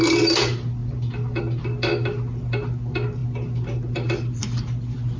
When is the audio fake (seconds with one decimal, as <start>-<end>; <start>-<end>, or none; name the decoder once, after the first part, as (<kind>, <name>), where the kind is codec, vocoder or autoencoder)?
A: none